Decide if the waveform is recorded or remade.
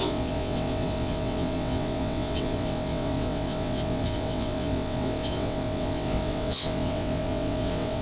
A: remade